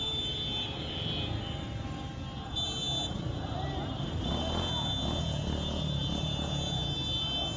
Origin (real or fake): real